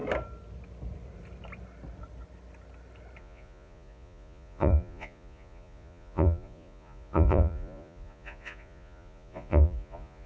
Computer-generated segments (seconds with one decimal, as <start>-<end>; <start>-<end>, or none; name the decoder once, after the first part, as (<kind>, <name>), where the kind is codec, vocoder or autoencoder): 3.2-10.3 (vocoder, Vocos)